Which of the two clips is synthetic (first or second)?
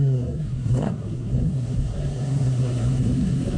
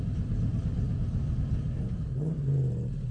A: first